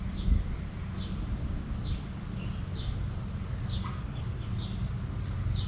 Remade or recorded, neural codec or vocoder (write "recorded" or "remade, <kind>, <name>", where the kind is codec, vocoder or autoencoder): recorded